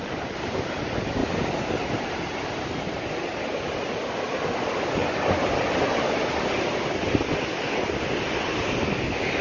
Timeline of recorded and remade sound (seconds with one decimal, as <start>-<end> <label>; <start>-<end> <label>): 0.0-1.2 recorded; 1.2-3.9 remade; 3.9-5.0 recorded; 5.0-5.7 remade; 5.7-9.4 recorded

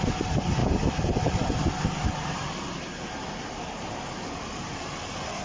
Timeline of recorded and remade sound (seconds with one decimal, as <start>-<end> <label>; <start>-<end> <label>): 0.0-5.4 recorded

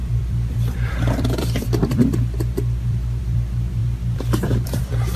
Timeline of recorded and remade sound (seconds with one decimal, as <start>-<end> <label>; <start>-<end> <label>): 0.0-5.2 remade

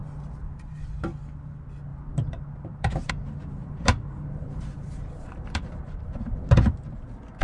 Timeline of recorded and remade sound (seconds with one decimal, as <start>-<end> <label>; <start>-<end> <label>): 0.0-0.8 remade; 0.8-1.9 recorded; 1.9-3.1 remade; 3.1-3.6 recorded; 3.6-6.7 remade; 6.7-7.4 recorded

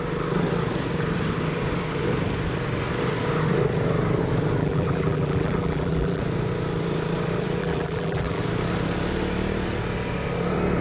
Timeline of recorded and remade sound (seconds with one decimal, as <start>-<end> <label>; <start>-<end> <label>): 0.0-4.6 recorded; 4.6-6.2 remade; 6.2-7.6 recorded; 7.6-8.4 remade; 8.4-10.8 recorded

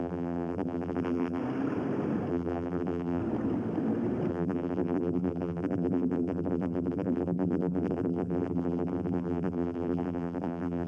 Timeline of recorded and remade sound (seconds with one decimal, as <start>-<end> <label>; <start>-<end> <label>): 0.0-1.4 remade; 1.4-2.3 recorded; 2.3-3.2 remade; 3.2-4.3 recorded; 4.3-10.9 remade